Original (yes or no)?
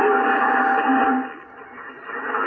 yes